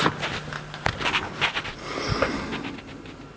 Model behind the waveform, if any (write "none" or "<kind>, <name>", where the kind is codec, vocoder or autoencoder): none